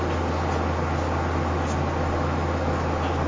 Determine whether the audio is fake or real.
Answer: real